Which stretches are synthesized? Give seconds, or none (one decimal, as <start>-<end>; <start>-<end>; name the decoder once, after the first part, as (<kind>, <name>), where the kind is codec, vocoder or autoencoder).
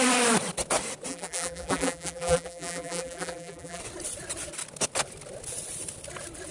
1.1-3.8 (vocoder, BigVGAN v2)